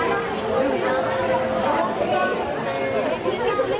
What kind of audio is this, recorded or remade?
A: recorded